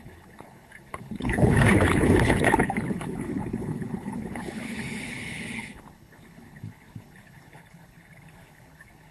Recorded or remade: remade